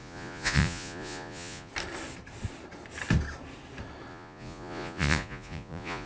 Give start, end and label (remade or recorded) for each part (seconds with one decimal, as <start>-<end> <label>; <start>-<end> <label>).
0.0-1.7 remade; 1.7-4.1 recorded; 4.1-6.1 remade